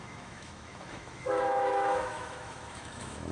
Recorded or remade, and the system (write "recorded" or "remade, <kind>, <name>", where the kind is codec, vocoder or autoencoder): remade, autoencoder, DAC-VAE